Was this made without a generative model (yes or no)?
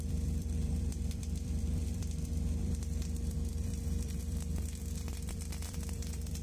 no